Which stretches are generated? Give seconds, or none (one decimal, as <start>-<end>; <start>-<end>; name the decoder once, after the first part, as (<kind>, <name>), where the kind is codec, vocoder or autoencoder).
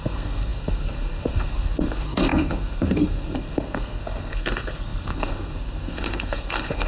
0.0-6.9 (codec, SNAC)